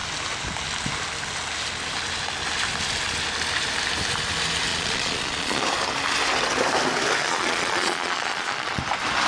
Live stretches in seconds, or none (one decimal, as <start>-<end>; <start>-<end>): 0.0-4.7; 5.6-7.2; 8.8-9.3